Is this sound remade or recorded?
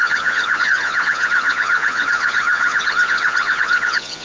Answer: remade